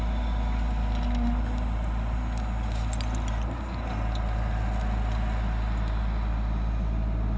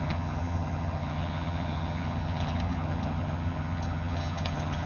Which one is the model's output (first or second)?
second